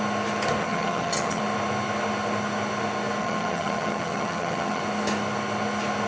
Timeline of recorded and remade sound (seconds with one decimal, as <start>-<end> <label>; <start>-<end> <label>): 0.0-0.6 recorded; 0.6-1.4 remade; 1.4-3.2 recorded; 3.2-4.8 remade; 4.8-6.1 recorded